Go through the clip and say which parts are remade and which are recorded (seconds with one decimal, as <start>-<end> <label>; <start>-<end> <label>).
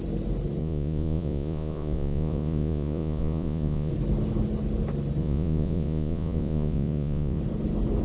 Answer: 0.0-0.6 recorded; 0.6-3.9 remade; 3.9-5.2 recorded; 5.2-7.4 remade; 7.4-8.0 recorded